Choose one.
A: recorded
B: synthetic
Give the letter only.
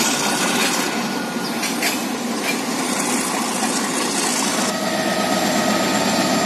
A